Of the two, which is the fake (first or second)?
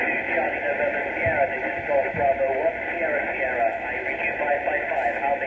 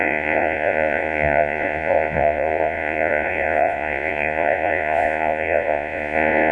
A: second